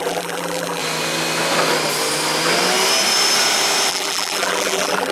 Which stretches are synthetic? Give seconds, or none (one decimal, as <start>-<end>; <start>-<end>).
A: 0.0-0.8; 3.9-5.1